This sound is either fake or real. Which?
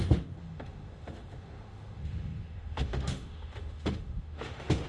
fake